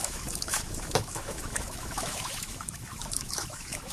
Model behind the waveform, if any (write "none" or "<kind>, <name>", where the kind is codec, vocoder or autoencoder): autoencoder, DAC-VAE